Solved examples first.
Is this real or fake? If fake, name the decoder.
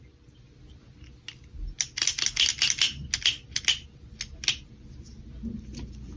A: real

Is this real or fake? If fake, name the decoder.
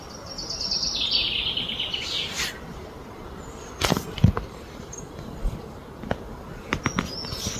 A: real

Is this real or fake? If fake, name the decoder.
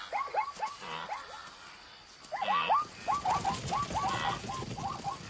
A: real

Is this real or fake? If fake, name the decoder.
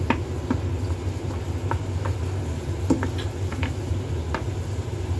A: real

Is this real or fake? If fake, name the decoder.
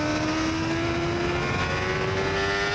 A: real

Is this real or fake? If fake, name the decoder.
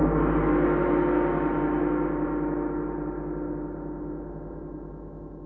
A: real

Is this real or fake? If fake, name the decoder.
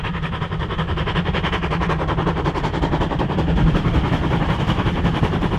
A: fake, vocoder, BigVGAN v2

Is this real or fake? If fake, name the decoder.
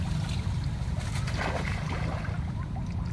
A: real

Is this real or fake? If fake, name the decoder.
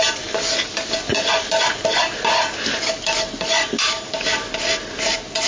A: real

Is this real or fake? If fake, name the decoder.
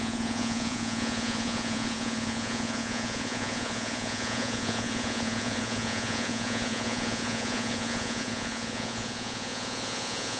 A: fake, vocoder, Vocos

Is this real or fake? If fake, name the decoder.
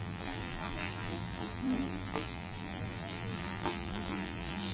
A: fake, vocoder, BigVGAN v2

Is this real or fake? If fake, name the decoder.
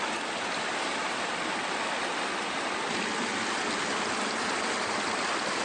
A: real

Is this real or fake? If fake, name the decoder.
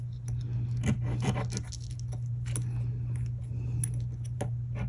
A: real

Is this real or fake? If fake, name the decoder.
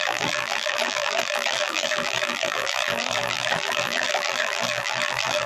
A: fake, vocoder, BigVGAN v2